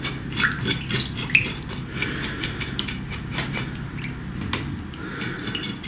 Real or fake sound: real